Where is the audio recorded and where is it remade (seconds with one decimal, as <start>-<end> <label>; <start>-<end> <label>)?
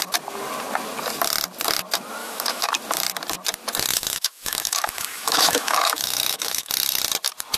0.0-2.2 recorded; 2.2-2.7 remade; 2.7-3.9 recorded; 3.9-6.7 remade; 6.7-7.6 recorded